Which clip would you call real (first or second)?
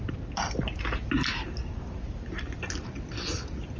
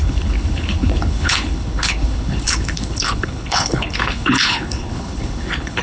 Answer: first